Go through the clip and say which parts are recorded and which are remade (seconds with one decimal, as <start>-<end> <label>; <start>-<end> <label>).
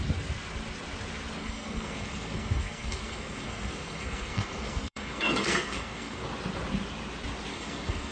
0.0-1.4 recorded; 1.4-6.2 remade; 6.2-7.5 recorded; 7.5-8.1 remade